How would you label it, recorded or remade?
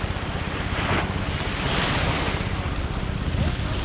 recorded